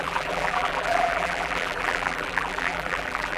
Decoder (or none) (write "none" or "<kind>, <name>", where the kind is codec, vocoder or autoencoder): vocoder, BigVGAN v2